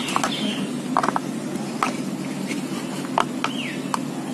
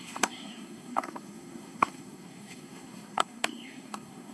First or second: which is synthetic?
second